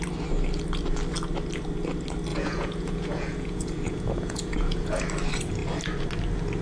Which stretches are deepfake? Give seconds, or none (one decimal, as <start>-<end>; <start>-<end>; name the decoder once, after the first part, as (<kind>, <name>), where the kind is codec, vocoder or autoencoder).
2.3-5.0 (vocoder, Vocos)